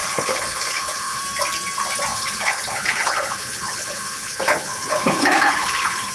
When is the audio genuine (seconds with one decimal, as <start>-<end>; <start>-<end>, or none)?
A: 1.2-2.1